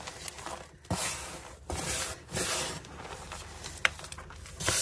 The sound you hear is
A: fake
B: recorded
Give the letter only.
B